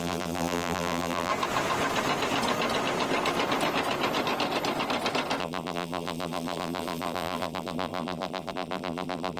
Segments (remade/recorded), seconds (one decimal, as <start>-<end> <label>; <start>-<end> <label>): 0.0-1.3 remade; 1.3-5.4 recorded; 5.4-9.4 remade